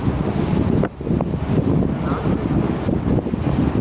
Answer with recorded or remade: recorded